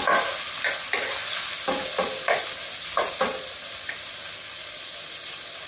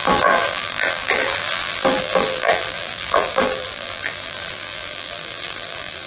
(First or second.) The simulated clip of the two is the second